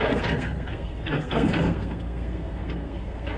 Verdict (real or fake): fake